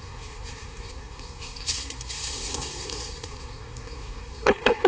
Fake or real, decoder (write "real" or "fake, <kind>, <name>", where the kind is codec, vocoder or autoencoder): fake, codec, SNAC